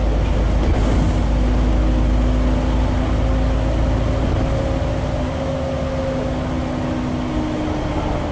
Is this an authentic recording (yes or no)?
yes